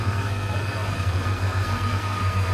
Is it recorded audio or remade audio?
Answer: remade